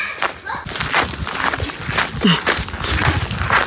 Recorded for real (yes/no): yes